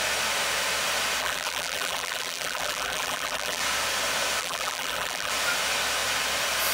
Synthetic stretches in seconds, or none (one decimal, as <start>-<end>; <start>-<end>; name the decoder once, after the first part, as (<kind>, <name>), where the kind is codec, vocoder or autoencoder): 1.2-3.6 (vocoder, BigVGAN v2); 4.4-5.3

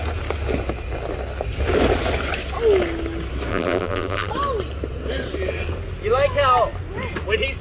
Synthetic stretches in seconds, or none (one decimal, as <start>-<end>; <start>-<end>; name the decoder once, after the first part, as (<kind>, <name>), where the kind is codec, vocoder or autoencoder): 3.5-4.3 (vocoder, BigVGAN v2)